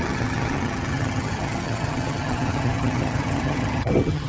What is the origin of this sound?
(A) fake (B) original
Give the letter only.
A